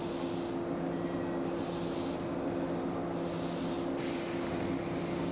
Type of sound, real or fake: real